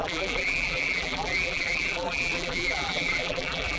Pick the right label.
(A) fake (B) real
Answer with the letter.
A